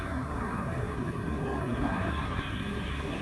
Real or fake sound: fake